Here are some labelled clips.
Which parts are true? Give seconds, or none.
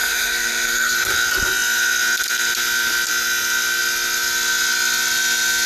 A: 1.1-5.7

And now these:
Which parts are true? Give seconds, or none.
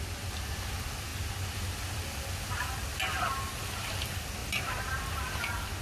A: 0.0-5.8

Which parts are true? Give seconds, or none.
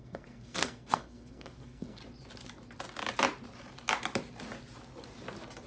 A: 2.0-5.7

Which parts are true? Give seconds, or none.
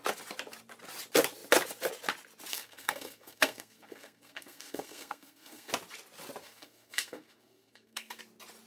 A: 0.0-2.5; 5.7-6.4; 8.2-8.7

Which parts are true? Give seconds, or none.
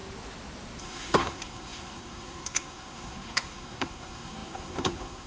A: 0.0-0.8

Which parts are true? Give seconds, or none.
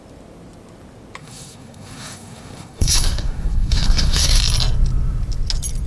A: 0.0-1.2; 4.4-5.9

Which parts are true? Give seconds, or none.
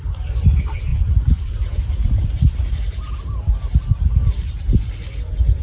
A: 0.0-5.6